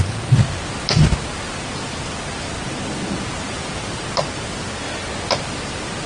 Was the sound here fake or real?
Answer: real